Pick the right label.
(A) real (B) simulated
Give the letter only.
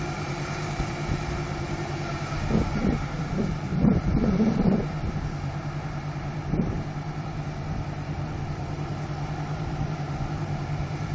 B